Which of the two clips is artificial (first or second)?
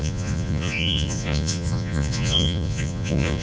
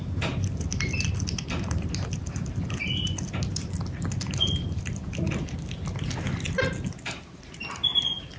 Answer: first